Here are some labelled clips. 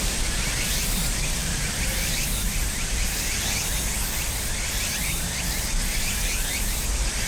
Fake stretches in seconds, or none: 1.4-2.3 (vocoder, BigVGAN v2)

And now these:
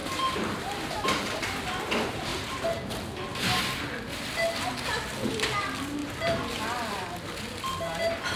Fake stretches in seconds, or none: 0.0-1.4 (vocoder, BigVGAN v2); 2.3-2.9; 6.0-6.6

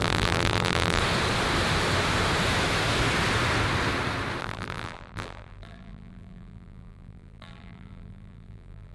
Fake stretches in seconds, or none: 0.0-1.0 (vocoder, BigVGAN v2); 4.4-8.9

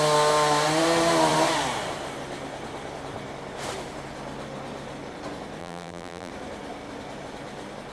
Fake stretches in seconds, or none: 5.6-6.3 (vocoder, BigVGAN v2)

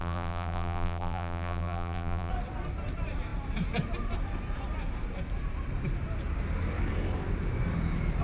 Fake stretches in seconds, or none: 0.0-2.3 (vocoder, BigVGAN v2)